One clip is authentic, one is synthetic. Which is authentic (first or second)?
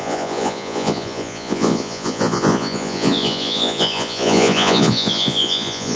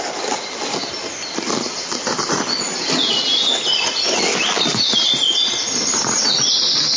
second